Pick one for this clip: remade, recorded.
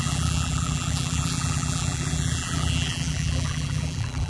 remade